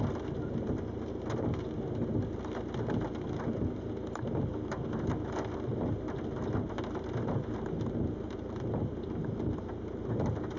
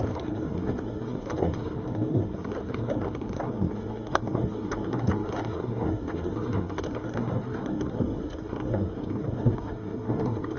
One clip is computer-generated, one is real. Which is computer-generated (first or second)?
second